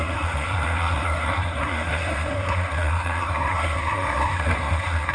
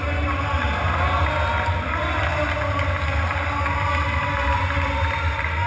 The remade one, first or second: first